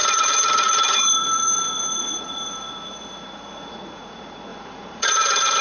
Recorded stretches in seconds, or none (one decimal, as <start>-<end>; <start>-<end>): none

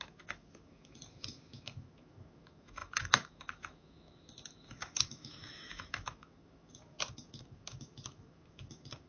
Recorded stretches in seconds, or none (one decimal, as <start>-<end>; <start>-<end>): none

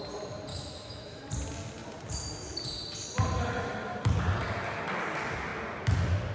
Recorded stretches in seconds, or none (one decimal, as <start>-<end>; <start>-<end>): 0.0-0.5; 1.2-6.3

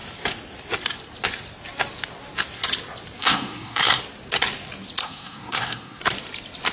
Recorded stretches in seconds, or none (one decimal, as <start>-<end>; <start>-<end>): 0.0-3.2; 4.0-5.0; 6.0-6.7

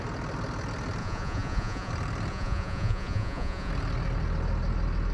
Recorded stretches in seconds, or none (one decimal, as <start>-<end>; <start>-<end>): 0.0-1.0; 1.9-2.3; 3.7-5.1

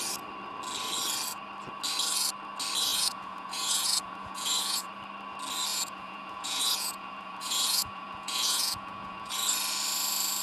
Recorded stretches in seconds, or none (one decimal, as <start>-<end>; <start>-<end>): 0.0-2.9; 4.9-5.7; 9.3-10.4

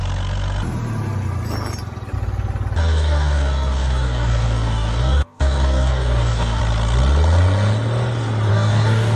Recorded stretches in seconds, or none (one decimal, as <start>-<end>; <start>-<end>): 0.0-2.8; 6.6-8.5